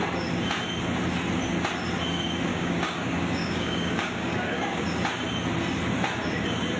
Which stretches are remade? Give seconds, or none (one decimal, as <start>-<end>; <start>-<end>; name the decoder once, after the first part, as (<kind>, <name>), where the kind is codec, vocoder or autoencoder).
2.5-4.8 (codec, DAC)